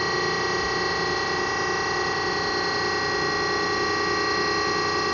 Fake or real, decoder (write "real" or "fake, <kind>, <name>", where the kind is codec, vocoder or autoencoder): real